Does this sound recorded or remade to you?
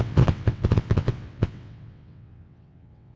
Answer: remade